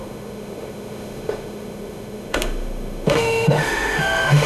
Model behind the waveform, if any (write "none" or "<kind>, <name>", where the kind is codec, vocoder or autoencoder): autoencoder, DAC-VAE